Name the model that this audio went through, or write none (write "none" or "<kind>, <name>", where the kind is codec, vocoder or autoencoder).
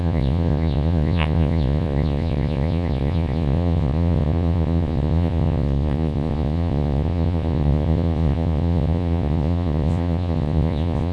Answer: vocoder, Vocos